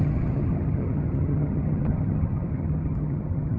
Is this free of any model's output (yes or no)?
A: no